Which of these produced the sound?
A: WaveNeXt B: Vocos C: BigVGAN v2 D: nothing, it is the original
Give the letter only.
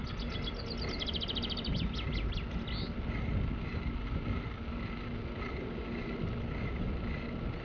D